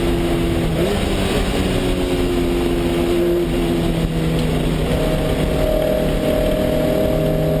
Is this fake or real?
real